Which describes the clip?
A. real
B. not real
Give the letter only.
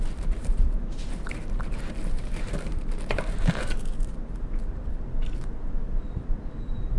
B